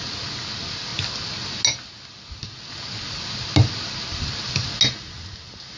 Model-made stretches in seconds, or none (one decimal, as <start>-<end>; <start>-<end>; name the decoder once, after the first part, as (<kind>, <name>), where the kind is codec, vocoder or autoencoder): none